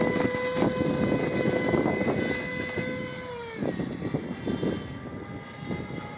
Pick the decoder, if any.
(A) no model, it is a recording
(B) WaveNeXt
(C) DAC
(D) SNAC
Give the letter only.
A